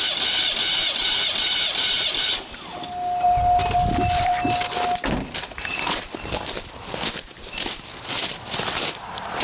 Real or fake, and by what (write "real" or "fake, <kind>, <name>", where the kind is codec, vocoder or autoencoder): fake, vocoder, BigVGAN v2